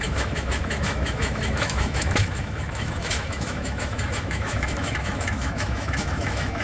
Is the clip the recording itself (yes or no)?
no